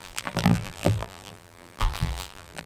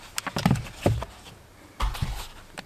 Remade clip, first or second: first